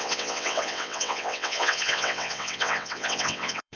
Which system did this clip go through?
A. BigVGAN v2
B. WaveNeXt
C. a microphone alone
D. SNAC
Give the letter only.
B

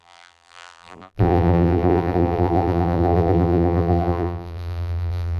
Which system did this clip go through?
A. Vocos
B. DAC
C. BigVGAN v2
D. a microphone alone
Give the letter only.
C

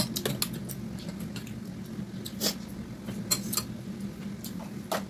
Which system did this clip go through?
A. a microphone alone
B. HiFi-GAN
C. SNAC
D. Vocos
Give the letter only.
A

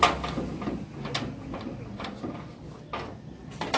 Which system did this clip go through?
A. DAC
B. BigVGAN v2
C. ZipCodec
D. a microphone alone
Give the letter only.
D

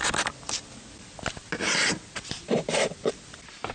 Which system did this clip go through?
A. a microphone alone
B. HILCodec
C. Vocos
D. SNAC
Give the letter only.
A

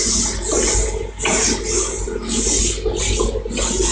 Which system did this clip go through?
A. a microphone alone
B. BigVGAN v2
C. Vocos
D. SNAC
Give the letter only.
A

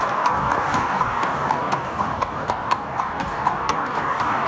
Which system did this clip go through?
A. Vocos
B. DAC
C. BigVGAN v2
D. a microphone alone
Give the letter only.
B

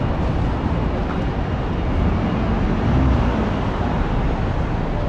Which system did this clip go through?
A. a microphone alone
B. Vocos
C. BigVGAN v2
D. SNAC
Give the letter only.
A